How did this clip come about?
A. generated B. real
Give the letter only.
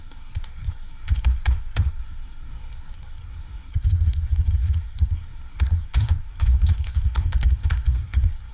A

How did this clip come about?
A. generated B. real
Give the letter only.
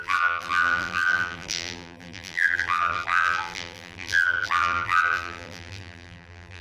A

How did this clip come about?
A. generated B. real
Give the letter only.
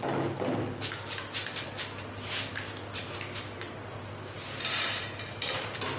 B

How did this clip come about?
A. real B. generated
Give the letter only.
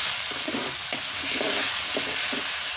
A